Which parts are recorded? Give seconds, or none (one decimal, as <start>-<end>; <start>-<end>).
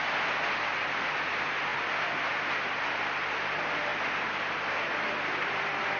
0.0-6.0